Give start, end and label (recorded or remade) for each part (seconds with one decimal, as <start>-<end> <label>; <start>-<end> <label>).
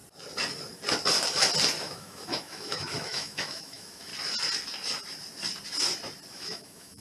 0.0-1.8 recorded; 1.8-4.1 remade; 4.1-6.3 recorded; 6.3-7.0 remade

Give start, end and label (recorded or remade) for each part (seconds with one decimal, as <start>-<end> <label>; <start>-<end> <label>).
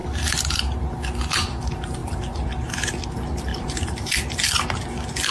0.0-0.6 remade; 0.6-3.5 recorded; 3.5-4.8 remade; 4.8-5.3 recorded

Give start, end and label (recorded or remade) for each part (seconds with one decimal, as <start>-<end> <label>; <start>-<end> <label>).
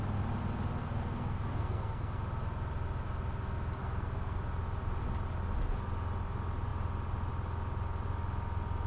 0.0-0.8 recorded; 0.8-2.2 remade; 2.2-3.8 recorded; 3.8-4.4 remade; 4.4-8.9 recorded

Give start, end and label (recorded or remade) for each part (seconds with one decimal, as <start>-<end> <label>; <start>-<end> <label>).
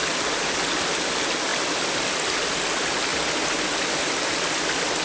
0.0-5.0 recorded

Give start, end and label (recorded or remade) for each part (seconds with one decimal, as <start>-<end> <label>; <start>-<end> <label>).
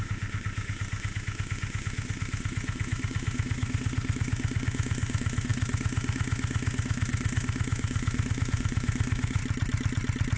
0.0-9.4 remade; 9.4-10.4 recorded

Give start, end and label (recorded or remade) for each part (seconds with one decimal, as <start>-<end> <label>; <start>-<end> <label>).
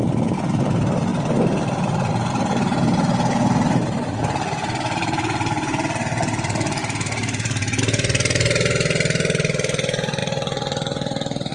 0.0-1.1 recorded; 1.1-2.3 remade; 2.3-6.8 recorded; 6.8-7.8 remade; 7.8-10.2 recorded; 10.2-11.5 remade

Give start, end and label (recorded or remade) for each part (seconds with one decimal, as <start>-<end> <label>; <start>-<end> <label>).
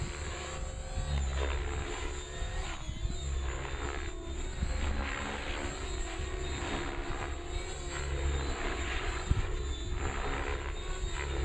0.0-8.7 recorded; 8.7-9.5 remade; 9.5-11.4 recorded